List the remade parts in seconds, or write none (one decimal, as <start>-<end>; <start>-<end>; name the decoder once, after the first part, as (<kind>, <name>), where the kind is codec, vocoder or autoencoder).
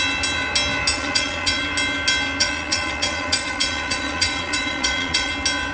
0.9-1.6 (vocoder, Vocos); 2.4-5.3